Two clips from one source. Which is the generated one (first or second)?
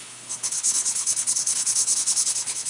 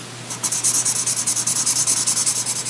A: first